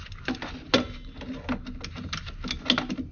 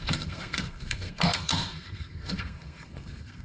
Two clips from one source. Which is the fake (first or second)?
second